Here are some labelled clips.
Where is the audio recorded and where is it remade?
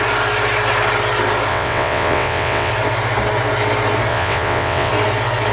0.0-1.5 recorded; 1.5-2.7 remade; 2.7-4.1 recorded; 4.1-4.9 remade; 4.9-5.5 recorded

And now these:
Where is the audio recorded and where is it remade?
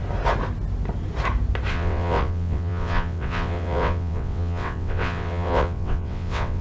0.0-1.7 recorded; 1.7-6.6 remade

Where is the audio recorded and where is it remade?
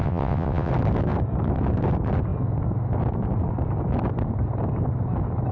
0.0-0.7 remade; 0.7-5.5 recorded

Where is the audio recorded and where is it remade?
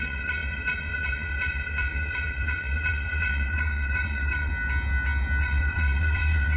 0.0-4.5 remade; 4.5-5.4 recorded; 5.4-6.6 remade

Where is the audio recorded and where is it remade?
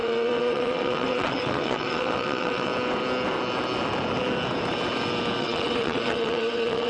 0.0-2.7 remade; 2.7-5.4 recorded; 5.4-6.9 remade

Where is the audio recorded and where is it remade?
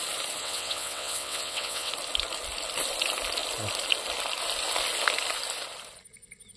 0.0-0.4 recorded; 0.4-1.9 remade; 1.9-6.6 recorded